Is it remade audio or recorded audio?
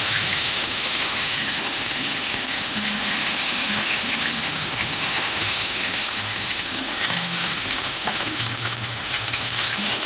remade